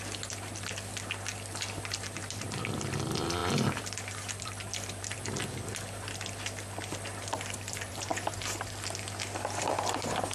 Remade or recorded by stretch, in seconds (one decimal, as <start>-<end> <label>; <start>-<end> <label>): 0.0-8.1 remade; 8.1-9.6 recorded; 9.6-10.3 remade